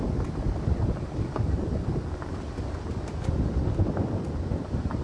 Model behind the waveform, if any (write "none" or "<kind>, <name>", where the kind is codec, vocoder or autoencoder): none